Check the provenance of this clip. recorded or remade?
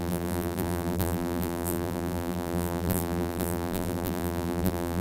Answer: remade